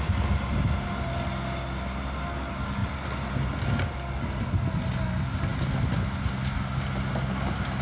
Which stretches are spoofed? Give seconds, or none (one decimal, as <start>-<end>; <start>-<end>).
2.8-3.3